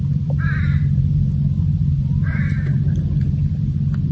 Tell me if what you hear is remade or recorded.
remade